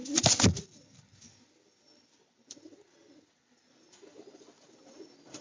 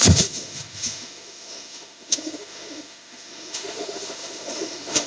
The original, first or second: first